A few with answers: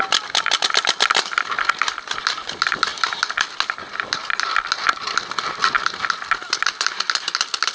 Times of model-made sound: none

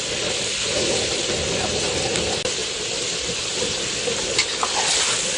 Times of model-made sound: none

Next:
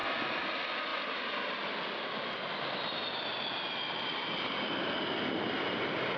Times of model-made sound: none

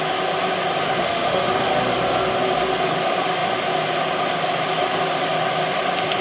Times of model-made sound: 1.0-1.7 (autoencoder, DAC-VAE)

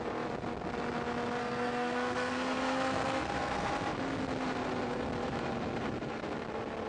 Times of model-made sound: 1.4-3.7 (codec, SNAC)

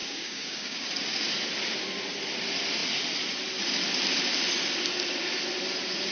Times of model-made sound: 0.0-0.9 (codec, DAC)